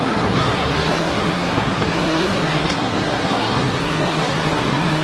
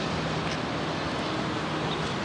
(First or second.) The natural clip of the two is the second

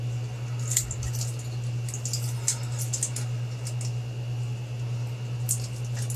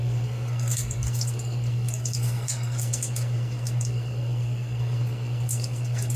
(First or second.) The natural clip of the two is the first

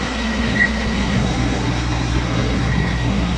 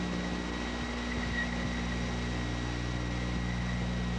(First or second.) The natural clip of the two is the second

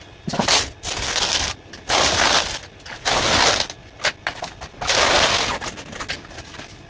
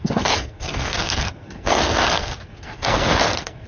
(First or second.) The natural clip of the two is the first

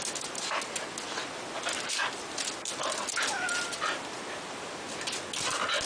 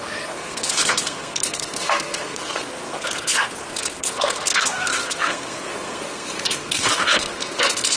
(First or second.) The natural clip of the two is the first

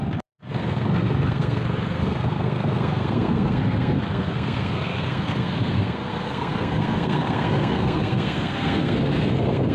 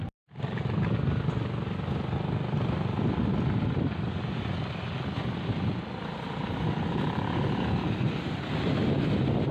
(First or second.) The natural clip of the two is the second